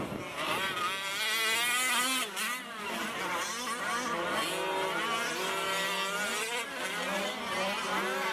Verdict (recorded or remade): recorded